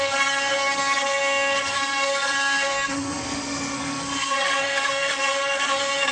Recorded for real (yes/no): no